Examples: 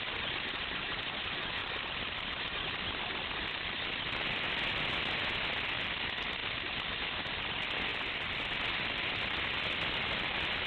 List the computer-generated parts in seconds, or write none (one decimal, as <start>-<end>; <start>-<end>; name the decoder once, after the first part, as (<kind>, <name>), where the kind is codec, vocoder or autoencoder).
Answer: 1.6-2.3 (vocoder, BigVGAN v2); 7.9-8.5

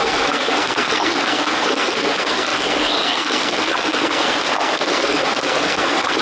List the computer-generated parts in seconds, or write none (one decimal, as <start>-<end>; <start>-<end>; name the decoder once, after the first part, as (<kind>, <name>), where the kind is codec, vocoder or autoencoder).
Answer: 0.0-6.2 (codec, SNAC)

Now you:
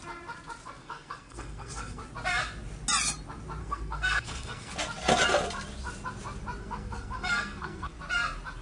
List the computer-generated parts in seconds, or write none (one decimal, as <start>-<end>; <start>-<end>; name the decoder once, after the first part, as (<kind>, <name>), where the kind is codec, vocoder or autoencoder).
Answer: 0.8-2.0 (codec, SNAC); 3.6-4.7; 6.6-8.0

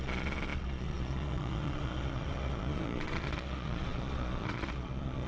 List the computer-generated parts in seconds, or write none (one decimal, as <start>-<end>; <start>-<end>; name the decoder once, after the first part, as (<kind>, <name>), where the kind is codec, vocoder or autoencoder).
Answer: 0.0-5.3 (vocoder, Vocos)

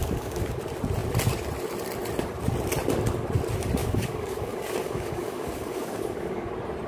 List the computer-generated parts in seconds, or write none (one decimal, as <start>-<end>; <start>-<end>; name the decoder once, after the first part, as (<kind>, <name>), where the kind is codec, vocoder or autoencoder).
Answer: 0.0-0.6 (codec, DAC); 3.8-6.5

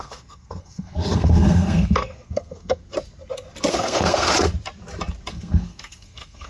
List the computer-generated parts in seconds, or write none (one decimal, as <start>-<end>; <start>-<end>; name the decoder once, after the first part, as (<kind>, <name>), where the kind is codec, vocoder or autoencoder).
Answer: 0.0-2.8 (codec, SNAC); 3.7-4.3; 5.3-6.5